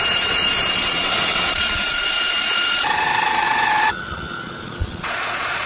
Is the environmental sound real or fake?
fake